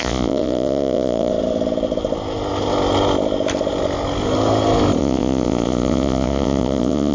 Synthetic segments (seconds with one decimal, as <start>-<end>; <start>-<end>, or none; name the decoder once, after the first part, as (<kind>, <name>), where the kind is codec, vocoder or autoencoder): 0.0-1.3 (vocoder, Vocos); 5.0-7.1